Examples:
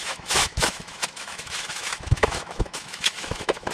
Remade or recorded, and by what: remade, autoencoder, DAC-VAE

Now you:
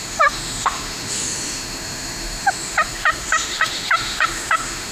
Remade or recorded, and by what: remade, autoencoder, DAC-VAE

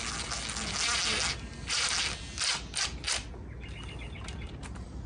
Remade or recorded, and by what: recorded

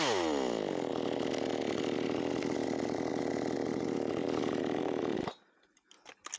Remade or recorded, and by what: recorded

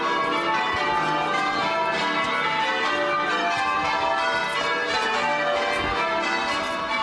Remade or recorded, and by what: recorded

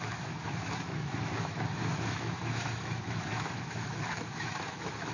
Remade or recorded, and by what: remade, autoencoder, DAC-VAE